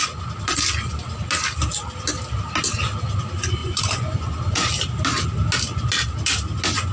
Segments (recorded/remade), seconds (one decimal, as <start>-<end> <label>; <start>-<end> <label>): 0.0-3.6 recorded; 3.6-4.7 remade; 4.7-6.9 recorded